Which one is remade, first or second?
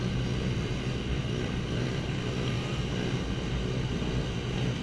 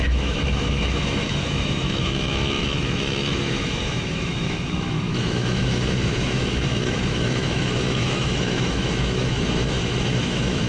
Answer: second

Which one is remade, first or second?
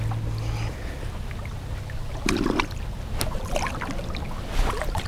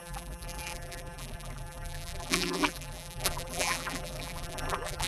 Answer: second